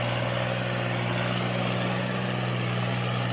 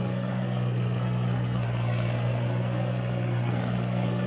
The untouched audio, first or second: first